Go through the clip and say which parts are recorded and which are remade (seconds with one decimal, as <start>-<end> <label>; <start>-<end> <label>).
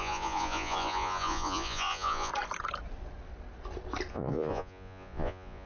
0.0-2.3 remade; 2.3-4.1 recorded; 4.1-5.7 remade